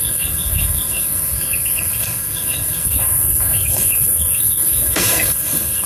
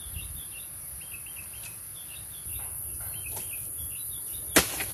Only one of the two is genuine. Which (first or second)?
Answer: second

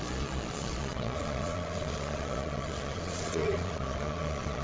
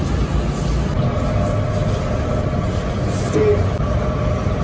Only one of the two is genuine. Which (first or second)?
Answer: second